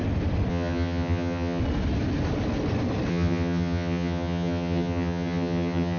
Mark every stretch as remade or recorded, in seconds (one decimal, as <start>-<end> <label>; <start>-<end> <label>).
0.0-0.5 recorded; 0.5-1.6 remade; 1.6-3.1 recorded; 3.1-6.0 remade